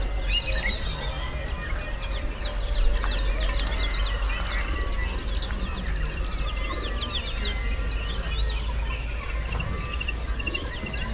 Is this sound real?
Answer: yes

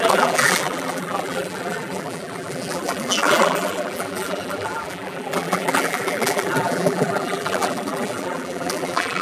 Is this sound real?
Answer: no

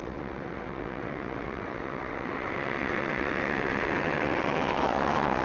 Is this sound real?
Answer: no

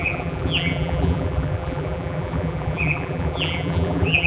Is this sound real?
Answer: no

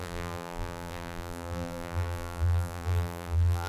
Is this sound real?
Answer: no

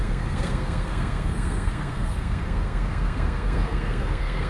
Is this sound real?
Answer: no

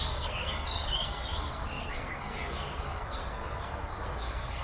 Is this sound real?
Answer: no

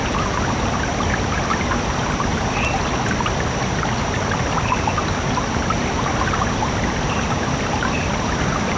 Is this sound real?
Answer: yes